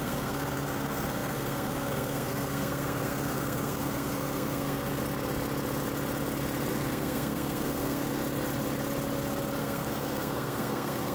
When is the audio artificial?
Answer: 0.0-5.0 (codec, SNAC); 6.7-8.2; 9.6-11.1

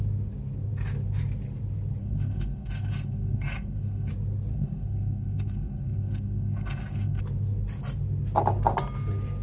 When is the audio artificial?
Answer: 2.0-4.1 (codec, SNAC); 4.5-7.2

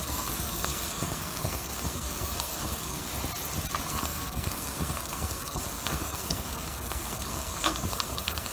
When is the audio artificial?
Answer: 0.0-3.1 (codec, SNAC); 3.9-8.5

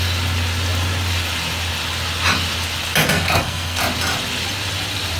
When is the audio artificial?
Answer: 3.0-3.8 (codec, SNAC)